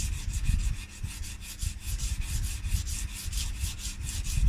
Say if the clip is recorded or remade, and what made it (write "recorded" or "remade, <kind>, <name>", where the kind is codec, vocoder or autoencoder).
recorded